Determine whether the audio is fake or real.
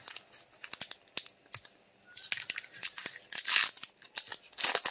real